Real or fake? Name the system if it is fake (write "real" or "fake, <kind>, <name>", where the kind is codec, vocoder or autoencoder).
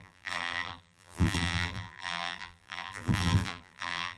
fake, vocoder, BigVGAN v2